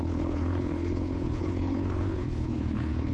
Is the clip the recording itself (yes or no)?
no